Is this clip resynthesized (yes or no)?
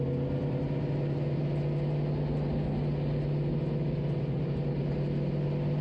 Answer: no